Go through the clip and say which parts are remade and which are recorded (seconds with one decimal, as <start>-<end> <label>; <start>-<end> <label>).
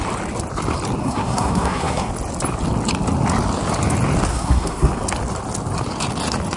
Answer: 0.0-1.0 recorded; 1.0-2.1 remade; 2.1-4.3 recorded; 4.3-4.9 remade; 4.9-6.6 recorded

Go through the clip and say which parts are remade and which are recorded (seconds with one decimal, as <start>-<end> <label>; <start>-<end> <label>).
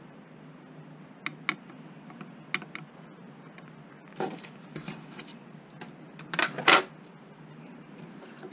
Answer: 0.0-8.5 recorded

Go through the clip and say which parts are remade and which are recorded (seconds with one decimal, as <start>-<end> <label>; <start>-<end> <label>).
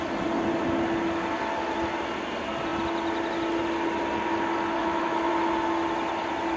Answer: 0.0-4.8 recorded; 4.8-5.3 remade; 5.3-6.6 recorded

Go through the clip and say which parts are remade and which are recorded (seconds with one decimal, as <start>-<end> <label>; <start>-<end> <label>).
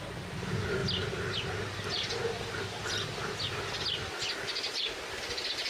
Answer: 0.0-5.7 recorded